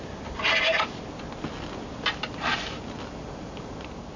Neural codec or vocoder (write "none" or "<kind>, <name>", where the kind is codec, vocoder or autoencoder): none